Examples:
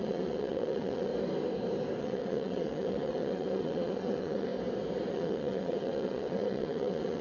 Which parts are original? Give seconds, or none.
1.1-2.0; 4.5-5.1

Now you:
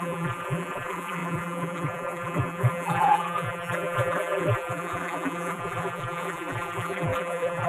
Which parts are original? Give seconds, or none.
none

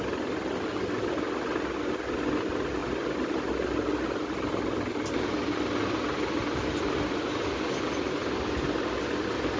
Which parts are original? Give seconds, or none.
0.0-9.6

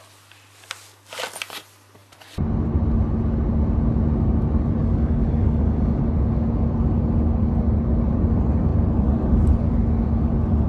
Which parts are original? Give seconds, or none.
0.0-4.8; 6.0-10.7